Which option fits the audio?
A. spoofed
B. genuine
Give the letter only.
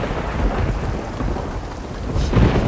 B